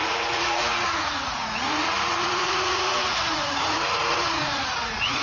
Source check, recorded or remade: remade